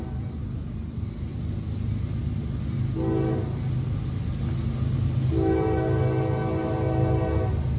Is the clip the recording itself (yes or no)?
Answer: yes